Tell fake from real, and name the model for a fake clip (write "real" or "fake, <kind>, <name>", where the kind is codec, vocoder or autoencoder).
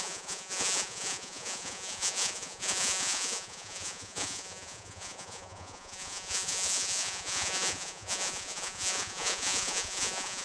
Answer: fake, vocoder, Vocos